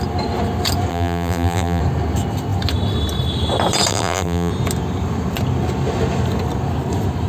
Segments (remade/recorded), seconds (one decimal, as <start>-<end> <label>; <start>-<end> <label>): 0.0-0.9 recorded; 0.9-1.8 remade; 1.8-3.9 recorded; 3.9-4.5 remade; 4.5-7.3 recorded